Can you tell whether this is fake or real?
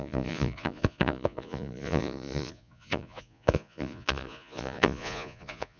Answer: fake